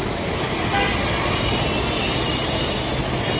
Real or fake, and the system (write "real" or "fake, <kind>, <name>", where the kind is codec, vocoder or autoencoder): real